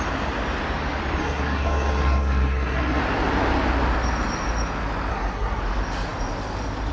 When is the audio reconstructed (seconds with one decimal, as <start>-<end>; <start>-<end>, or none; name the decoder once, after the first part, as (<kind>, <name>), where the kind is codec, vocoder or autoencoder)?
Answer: 1.2-3.0 (codec, SNAC); 5.1-5.6